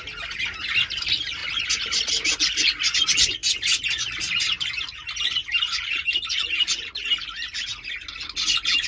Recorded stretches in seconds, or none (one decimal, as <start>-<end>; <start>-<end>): 0.0-1.4; 2.1-3.4; 7.1-8.9

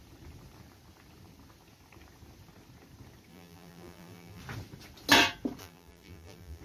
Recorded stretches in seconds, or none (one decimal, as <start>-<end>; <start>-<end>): 0.0-3.3; 4.4-5.6

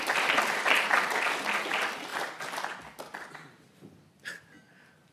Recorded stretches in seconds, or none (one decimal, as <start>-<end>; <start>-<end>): 0.0-5.1

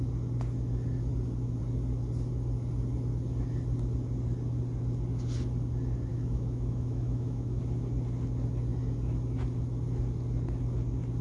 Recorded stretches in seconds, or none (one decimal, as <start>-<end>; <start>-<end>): 0.0-6.1; 7.6-11.2

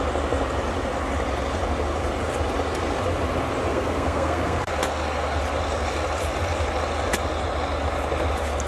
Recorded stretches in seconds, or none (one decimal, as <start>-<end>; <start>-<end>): 0.0-3.7; 4.7-8.7

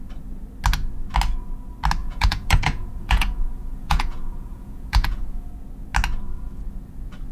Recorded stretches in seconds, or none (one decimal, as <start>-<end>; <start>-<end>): 0.0-2.0; 5.5-7.3